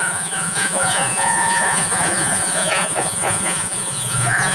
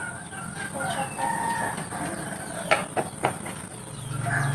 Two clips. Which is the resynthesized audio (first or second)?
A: first